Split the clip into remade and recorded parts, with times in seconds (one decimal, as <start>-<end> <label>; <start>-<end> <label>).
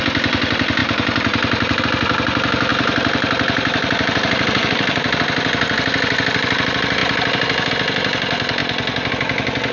0.0-0.8 recorded; 0.8-1.8 remade; 1.8-2.7 recorded; 2.7-5.2 remade; 5.2-9.7 recorded